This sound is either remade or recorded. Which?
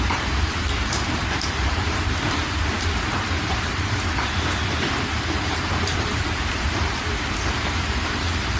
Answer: remade